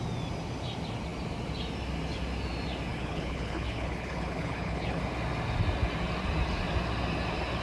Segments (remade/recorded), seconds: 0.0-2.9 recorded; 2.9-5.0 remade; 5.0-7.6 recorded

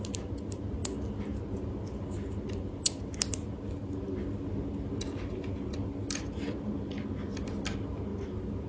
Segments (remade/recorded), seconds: 0.0-8.7 recorded

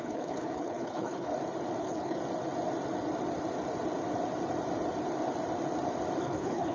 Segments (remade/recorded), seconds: 0.0-1.3 remade; 1.3-1.8 recorded; 1.8-2.2 remade; 2.2-6.2 recorded; 6.2-6.7 remade

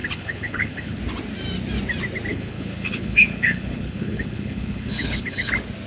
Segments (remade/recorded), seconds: 0.0-1.0 remade; 1.0-2.3 recorded; 2.3-5.5 remade; 5.5-5.9 recorded

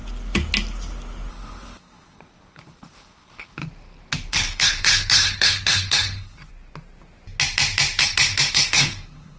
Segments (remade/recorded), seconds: 0.0-1.3 recorded; 1.3-3.6 remade; 3.6-4.3 recorded; 4.3-6.5 remade; 6.5-8.0 recorded; 8.0-9.4 remade

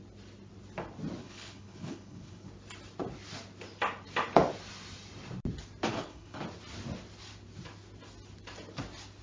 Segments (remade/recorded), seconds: 0.0-1.2 recorded; 1.2-2.5 remade; 2.5-5.9 recorded; 5.9-6.4 remade; 6.4-9.2 recorded